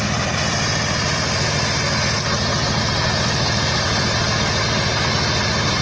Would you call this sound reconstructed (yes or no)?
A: no